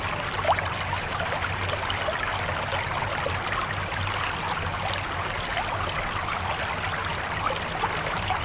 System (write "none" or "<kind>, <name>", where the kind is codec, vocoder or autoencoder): none